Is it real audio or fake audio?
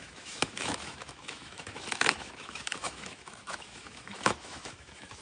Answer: fake